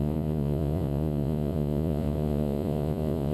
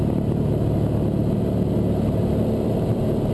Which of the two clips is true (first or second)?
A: second